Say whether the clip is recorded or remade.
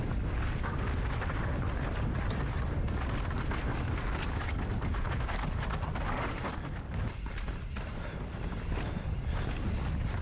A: recorded